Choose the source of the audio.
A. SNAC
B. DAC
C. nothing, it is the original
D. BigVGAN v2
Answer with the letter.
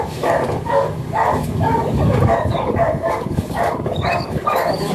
B